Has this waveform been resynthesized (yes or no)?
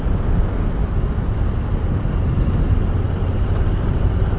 no